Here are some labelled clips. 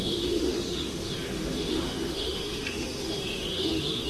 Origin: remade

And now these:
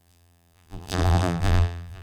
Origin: remade